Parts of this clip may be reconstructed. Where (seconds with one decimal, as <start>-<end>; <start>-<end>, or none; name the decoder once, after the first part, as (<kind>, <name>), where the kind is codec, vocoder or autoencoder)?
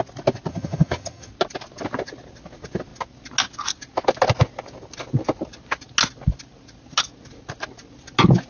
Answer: 0.5-1.3 (vocoder, HiFi-GAN)